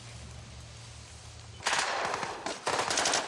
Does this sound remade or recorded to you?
recorded